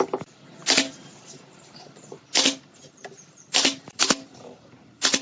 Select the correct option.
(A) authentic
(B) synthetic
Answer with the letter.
A